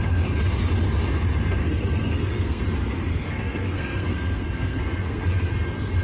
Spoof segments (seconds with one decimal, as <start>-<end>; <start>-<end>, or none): 1.6-2.6; 3.1-5.5